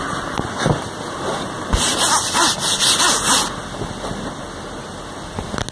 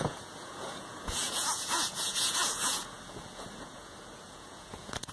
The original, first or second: first